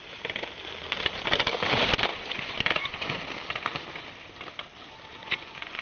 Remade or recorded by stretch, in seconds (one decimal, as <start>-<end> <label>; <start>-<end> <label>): 0.0-2.1 recorded; 2.1-3.2 remade; 3.2-5.2 recorded; 5.2-5.8 remade